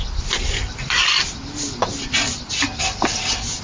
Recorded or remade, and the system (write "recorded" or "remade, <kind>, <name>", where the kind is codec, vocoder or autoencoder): recorded